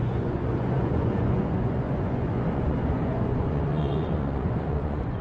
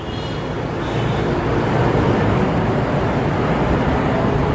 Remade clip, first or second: first